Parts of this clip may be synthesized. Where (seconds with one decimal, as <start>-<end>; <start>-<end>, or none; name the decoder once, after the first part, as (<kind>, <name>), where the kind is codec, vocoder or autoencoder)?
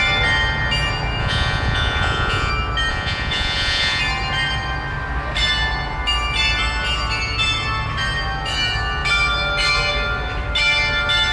1.2-2.5 (vocoder, Vocos); 2.9-4.0